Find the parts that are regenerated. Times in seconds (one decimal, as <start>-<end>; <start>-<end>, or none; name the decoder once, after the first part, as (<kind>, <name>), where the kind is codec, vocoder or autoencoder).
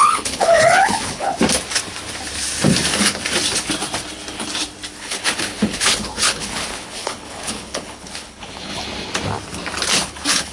0.0-1.3 (codec, HILCodec); 5.0-8.7; 9.9-10.5